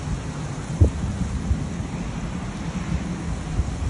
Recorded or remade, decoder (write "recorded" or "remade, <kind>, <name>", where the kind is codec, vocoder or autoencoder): recorded